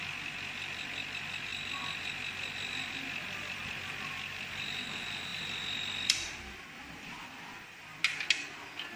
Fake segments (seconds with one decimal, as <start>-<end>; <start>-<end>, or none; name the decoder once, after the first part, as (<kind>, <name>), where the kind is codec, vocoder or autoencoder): none